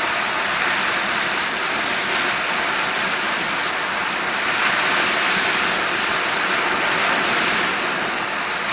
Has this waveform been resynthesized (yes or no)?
no